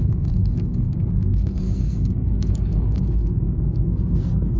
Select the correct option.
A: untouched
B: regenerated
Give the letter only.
B